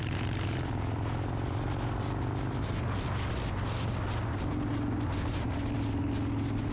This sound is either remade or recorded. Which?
recorded